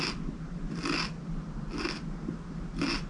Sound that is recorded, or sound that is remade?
recorded